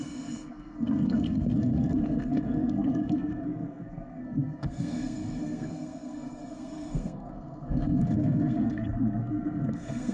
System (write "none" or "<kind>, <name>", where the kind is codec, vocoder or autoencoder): codec, SNAC